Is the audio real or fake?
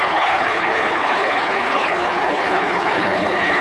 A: fake